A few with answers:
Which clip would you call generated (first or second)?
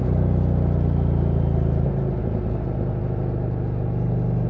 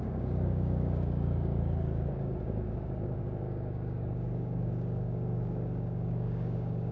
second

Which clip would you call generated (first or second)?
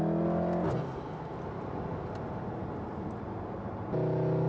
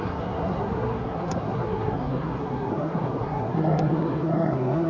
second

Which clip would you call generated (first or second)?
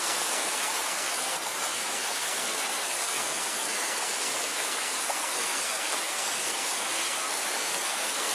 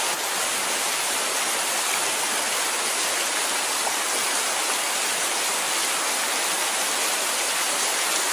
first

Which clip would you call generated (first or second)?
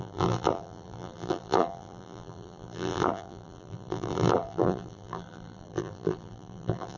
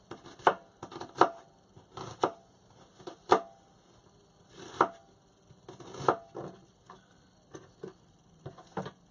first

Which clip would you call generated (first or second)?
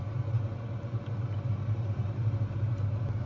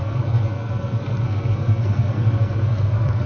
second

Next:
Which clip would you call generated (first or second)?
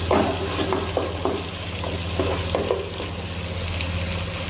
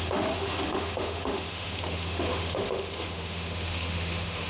second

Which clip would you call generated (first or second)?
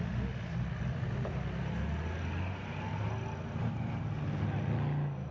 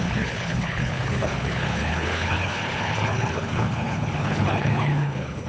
second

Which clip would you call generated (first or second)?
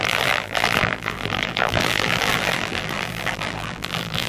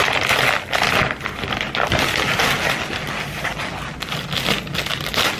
first